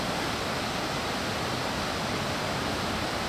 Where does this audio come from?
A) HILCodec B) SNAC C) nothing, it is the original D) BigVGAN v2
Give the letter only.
C